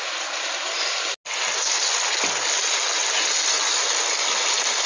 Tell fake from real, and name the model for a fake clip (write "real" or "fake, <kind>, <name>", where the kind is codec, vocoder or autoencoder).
real